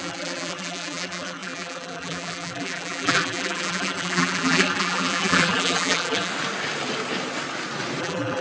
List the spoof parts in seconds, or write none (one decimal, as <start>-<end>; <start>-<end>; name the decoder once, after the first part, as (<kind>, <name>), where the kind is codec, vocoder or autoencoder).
0.0-6.3 (vocoder, BigVGAN v2); 8.0-8.4